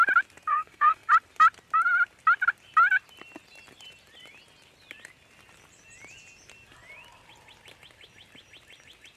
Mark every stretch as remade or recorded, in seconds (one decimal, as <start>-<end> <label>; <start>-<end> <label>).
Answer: 0.0-0.5 recorded; 0.5-1.1 remade; 1.1-9.2 recorded